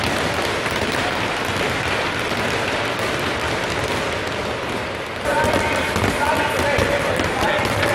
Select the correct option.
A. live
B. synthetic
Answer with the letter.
A